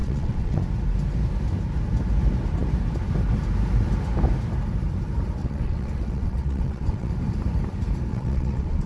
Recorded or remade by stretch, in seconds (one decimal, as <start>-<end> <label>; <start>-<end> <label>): 0.0-0.6 remade; 0.6-5.4 recorded; 5.4-7.1 remade; 7.1-8.1 recorded; 8.1-8.9 remade